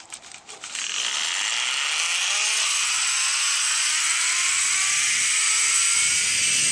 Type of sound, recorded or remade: recorded